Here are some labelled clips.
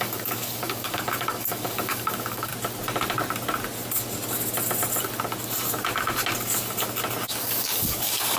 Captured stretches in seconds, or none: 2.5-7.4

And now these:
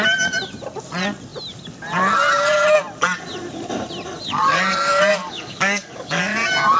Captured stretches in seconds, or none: 0.0-5.2; 6.2-6.8

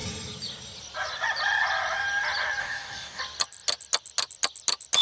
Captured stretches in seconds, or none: 0.0-2.6; 3.2-5.0

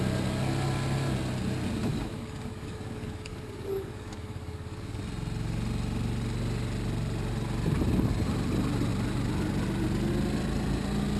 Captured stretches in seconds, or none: 0.0-1.9; 5.0-11.2

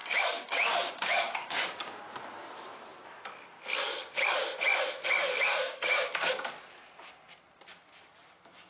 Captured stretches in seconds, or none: 2.0-5.5; 6.3-8.7

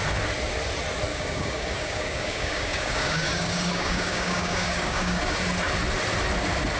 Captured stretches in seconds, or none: 0.0-1.1; 5.2-6.8

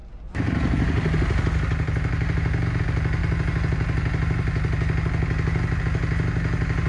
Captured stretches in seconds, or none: 0.0-6.9